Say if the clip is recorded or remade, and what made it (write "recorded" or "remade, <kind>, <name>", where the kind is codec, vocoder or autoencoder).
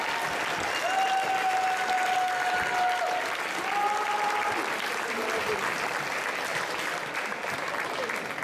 recorded